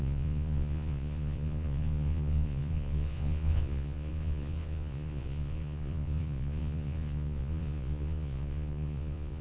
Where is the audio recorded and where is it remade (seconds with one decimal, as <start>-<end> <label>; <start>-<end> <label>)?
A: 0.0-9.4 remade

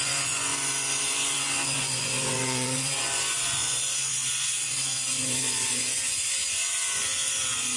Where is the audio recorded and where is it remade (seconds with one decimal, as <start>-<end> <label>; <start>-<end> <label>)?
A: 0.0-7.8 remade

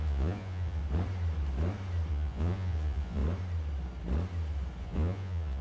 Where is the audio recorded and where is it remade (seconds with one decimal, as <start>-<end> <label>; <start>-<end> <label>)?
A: 0.0-0.8 remade; 0.8-2.1 recorded; 2.1-3.2 remade; 3.2-4.8 recorded; 4.8-5.6 remade

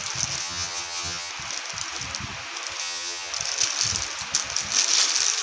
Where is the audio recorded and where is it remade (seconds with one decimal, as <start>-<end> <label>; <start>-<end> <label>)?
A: 0.0-0.4 recorded; 0.4-1.3 remade; 1.3-2.8 recorded; 2.8-3.3 remade; 3.3-5.4 recorded

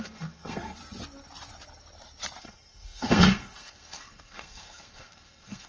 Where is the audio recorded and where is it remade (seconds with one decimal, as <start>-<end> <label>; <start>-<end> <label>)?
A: 0.0-0.8 remade; 0.8-2.4 recorded; 2.4-5.7 remade

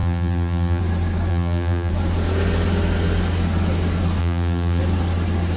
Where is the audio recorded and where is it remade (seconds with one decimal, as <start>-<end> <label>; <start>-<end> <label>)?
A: 0.0-0.8 remade; 0.8-1.3 recorded; 1.3-1.9 remade; 1.9-4.2 recorded; 4.2-4.8 remade; 4.8-5.6 recorded

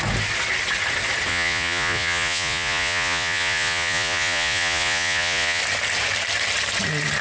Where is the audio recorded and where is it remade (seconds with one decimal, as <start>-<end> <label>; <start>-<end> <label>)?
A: 0.0-1.3 recorded; 1.3-5.6 remade; 5.6-7.2 recorded